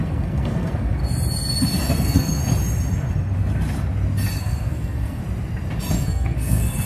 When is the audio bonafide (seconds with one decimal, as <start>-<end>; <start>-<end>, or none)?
1.0-1.9; 2.4-4.4; 5.2-5.9